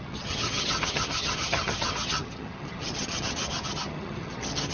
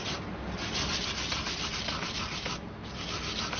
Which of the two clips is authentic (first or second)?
second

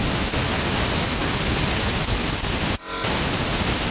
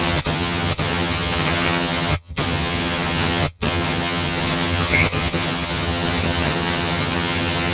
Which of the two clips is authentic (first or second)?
first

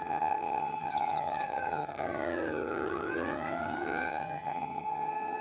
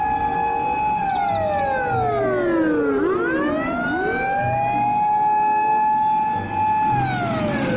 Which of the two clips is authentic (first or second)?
second